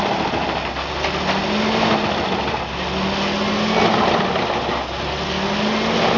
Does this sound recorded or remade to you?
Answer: recorded